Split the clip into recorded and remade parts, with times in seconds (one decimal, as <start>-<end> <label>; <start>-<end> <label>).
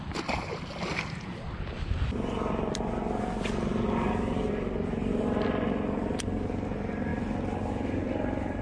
0.0-8.6 recorded